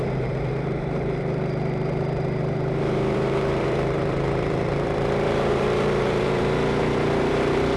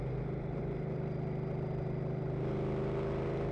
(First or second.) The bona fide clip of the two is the second